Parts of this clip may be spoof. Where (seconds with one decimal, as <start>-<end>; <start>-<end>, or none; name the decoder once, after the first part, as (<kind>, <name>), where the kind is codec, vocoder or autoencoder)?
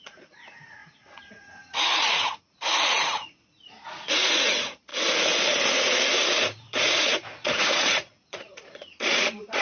0.0-4.9 (vocoder, Vocos); 6.4-9.6